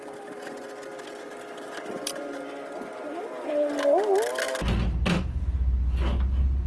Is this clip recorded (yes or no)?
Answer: yes